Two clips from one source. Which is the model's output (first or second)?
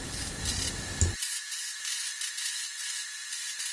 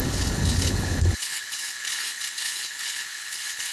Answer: second